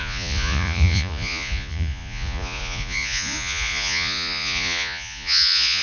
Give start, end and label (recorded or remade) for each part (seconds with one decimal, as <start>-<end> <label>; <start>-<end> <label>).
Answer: 0.0-5.8 remade